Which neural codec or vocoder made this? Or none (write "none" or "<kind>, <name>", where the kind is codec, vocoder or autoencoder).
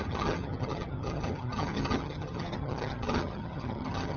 vocoder, HiFi-GAN